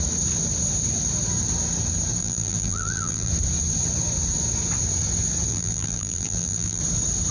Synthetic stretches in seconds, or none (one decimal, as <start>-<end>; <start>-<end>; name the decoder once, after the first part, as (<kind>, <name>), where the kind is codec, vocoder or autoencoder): 2.2-3.3 (vocoder, BigVGAN v2); 5.5-6.8